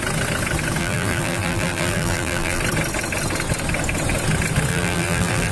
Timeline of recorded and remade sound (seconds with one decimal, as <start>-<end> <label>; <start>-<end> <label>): 0.0-0.8 recorded; 0.8-2.6 remade; 2.6-4.7 recorded; 4.7-5.5 remade